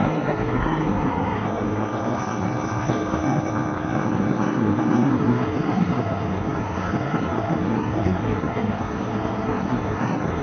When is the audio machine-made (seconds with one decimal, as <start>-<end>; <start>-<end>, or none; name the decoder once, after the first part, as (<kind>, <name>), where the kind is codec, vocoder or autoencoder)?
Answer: 0.0-10.4 (codec, SNAC)